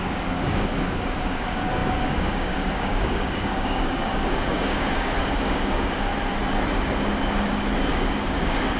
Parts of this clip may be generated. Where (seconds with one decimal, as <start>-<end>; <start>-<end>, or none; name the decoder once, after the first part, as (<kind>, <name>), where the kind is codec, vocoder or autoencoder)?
0.0-6.1 (codec, DAC); 7.9-8.8